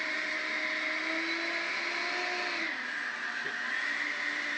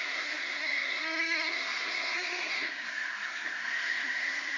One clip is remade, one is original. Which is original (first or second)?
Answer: first